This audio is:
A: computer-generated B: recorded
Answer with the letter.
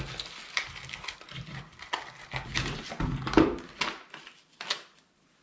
B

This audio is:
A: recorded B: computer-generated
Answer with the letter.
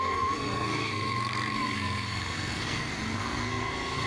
B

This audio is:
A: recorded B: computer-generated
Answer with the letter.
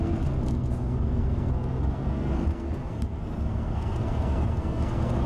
B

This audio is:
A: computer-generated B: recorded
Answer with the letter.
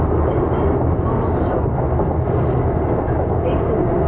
B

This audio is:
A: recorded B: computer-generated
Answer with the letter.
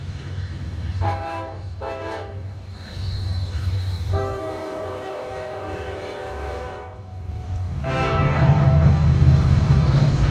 B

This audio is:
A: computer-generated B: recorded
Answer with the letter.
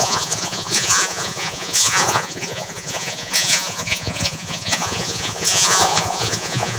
A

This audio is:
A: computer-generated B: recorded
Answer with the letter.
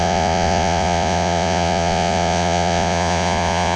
A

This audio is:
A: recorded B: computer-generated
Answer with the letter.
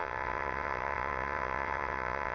B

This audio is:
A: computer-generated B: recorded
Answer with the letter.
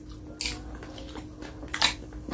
B